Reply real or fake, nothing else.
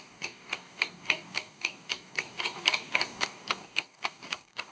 fake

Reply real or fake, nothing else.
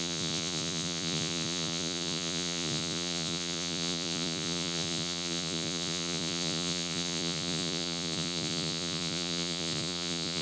fake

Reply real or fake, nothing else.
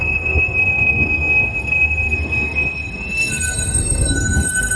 fake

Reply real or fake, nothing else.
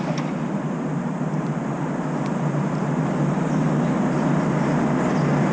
real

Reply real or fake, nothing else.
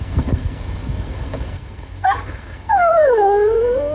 fake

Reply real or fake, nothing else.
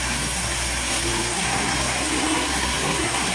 fake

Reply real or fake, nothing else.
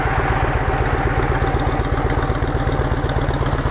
real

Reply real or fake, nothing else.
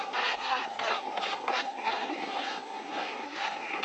fake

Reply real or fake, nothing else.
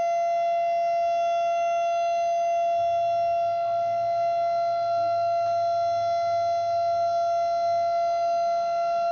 real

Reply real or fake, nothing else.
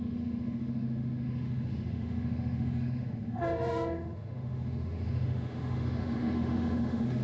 fake